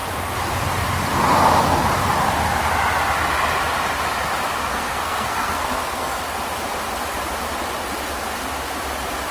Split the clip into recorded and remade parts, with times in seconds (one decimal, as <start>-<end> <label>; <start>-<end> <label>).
0.0-4.6 recorded; 4.6-6.2 remade; 6.2-9.3 recorded

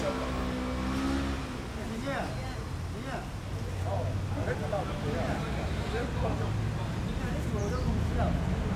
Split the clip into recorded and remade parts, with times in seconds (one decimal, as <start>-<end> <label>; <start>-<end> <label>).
0.0-8.8 recorded

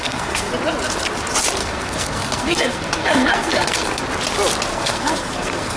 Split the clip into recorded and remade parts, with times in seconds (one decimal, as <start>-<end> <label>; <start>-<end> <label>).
0.0-0.5 remade; 0.5-1.6 recorded; 1.6-4.0 remade; 4.0-4.7 recorded; 4.7-5.8 remade

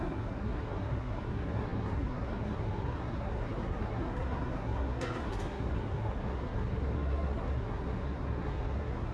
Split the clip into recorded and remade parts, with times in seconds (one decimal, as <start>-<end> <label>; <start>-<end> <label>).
0.0-9.1 remade

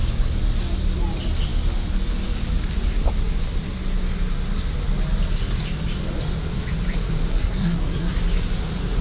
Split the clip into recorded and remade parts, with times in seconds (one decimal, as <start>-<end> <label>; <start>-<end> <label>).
0.0-7.3 recorded; 7.3-8.2 remade; 8.2-9.0 recorded

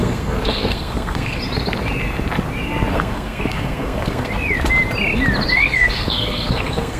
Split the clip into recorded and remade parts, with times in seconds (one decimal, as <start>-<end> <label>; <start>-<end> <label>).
0.0-1.4 remade; 1.4-2.9 recorded; 2.9-4.3 remade; 4.3-5.5 recorded; 5.5-7.0 remade